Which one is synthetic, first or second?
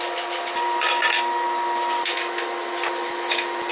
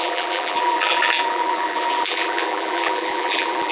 second